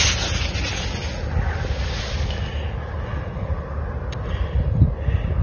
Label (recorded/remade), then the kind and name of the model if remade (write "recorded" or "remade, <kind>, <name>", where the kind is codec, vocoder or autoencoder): recorded